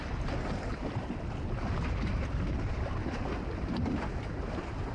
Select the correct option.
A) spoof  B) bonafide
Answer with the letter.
B